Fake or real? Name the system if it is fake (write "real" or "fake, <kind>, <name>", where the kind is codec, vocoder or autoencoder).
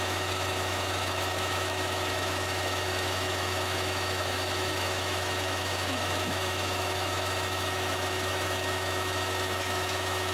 fake, autoencoder, DAC-VAE